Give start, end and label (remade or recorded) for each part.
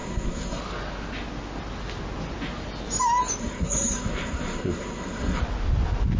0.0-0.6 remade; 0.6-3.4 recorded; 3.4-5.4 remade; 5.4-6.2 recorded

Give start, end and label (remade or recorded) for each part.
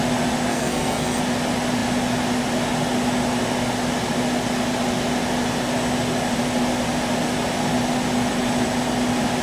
0.0-0.5 recorded; 0.5-1.2 remade; 1.2-9.4 recorded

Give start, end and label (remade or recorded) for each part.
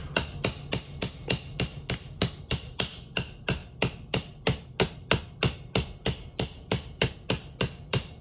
0.0-8.2 recorded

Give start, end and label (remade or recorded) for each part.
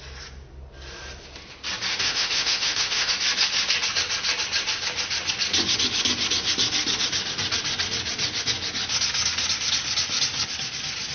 0.0-1.9 recorded; 1.9-3.1 remade; 3.1-11.1 recorded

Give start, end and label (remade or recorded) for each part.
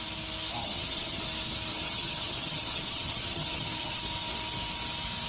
0.0-0.6 recorded; 0.6-1.2 remade; 1.2-1.7 recorded; 1.7-4.0 remade; 4.0-5.3 recorded